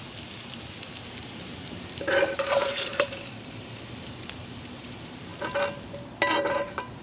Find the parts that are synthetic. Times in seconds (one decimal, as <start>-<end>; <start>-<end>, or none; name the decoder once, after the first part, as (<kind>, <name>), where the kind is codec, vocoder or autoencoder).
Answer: 0.8-5.3 (vocoder, BigVGAN v2); 6.4-7.0